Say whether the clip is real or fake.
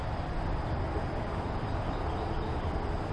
real